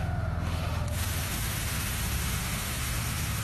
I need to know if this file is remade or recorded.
remade